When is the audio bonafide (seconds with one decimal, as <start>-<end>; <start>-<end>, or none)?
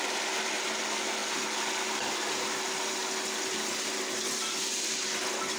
0.0-5.6